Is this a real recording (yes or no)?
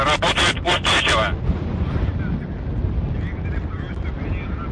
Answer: yes